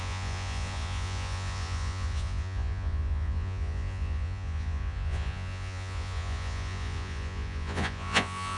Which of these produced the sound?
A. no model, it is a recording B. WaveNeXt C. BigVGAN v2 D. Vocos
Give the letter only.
D